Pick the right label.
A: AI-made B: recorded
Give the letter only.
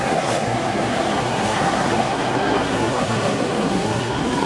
A